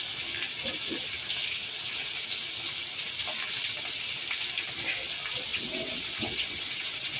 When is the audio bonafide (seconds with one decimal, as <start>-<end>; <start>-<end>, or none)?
0.0-5.5